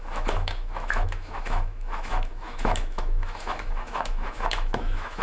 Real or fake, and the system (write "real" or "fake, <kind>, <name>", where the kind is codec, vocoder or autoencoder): fake, autoencoder, DAC-VAE